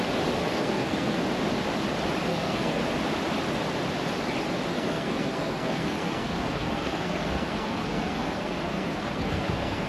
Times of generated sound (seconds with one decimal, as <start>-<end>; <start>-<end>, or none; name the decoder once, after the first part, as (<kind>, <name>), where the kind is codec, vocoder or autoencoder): 0.4-1.2 (codec, SNAC); 2.3-2.8; 4.7-9.9